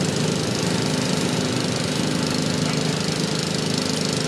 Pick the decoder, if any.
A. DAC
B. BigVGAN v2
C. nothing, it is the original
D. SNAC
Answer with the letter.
C